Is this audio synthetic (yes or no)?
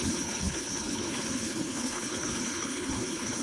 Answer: yes